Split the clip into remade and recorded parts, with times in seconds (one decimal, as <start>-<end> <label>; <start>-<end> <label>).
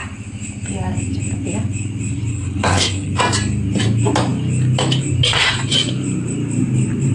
0.0-2.3 recorded; 2.3-3.2 remade; 3.2-7.1 recorded